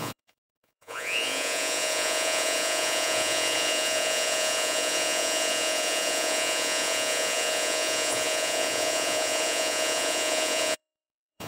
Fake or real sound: fake